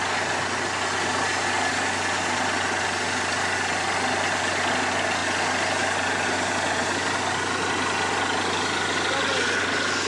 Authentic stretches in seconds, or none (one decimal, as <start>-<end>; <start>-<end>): 0.0-10.1